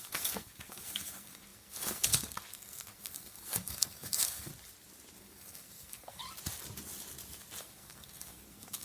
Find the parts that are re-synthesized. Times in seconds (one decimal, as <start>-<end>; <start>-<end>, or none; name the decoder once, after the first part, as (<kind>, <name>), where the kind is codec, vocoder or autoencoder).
0.0-4.5 (codec, SNAC); 5.2-6.2; 7.6-8.8